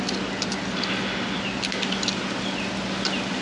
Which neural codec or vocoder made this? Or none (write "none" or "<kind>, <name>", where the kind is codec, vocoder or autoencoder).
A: none